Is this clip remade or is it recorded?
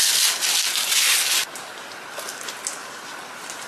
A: recorded